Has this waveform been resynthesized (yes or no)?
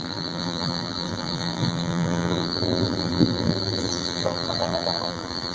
yes